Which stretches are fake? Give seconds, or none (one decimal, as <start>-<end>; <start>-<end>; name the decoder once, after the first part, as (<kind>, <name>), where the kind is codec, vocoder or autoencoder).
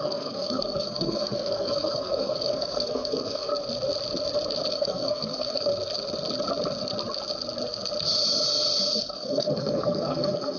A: 0.0-3.5 (codec, SNAC); 4.7-5.7; 9.0-10.6